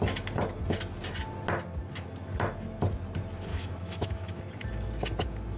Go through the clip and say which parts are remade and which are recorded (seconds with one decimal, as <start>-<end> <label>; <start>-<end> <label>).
0.0-3.5 recorded; 3.5-4.4 remade; 4.4-5.6 recorded